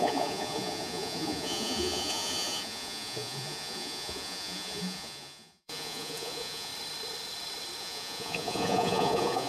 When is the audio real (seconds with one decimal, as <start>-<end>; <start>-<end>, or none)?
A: 6.7-7.8